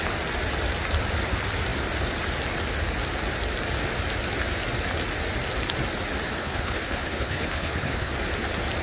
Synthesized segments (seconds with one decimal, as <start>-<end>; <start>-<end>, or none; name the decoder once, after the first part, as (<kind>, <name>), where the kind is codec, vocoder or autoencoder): 6.4-8.1 (codec, HILCodec)